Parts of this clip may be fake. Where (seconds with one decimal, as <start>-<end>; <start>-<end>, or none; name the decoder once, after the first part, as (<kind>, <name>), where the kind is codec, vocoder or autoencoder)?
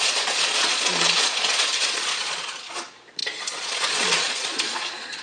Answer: 0.0-5.2 (vocoder, Vocos)